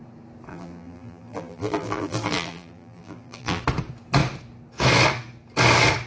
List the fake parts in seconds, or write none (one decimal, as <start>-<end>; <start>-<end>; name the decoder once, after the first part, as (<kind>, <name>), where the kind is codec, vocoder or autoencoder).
0.5-3.6 (vocoder, BigVGAN v2)